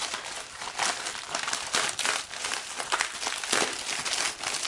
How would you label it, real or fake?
real